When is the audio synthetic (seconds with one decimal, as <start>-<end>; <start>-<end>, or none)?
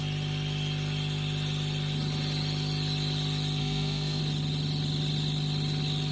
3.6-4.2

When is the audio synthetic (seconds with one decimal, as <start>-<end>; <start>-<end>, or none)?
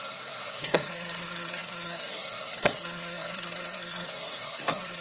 0.0-5.0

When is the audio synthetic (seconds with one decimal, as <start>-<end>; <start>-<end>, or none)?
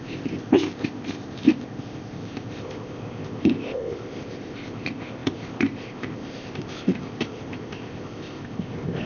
0.0-9.1